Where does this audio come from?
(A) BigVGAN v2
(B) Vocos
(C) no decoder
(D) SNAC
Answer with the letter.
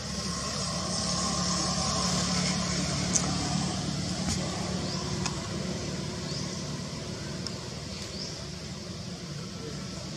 C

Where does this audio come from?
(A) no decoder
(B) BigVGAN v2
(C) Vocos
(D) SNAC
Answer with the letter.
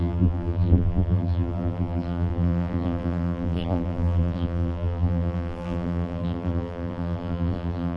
B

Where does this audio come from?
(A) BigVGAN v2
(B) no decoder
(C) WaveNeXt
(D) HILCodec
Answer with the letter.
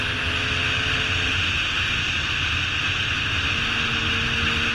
B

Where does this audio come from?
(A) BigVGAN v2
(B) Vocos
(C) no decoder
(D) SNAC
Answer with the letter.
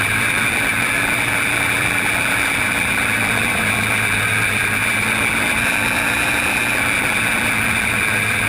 A